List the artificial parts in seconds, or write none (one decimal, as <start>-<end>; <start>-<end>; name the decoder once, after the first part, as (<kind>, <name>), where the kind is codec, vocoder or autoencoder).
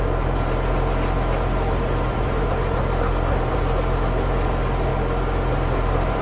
0.0-4.9 (vocoder, BigVGAN v2); 5.5-6.2